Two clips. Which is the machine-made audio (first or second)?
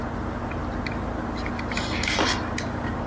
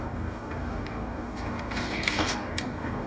second